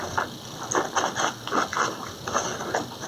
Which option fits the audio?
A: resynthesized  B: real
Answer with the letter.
B